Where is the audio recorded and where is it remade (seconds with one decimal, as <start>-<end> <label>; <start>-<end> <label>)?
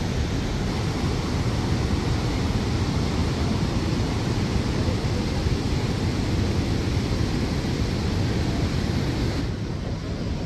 0.0-10.5 recorded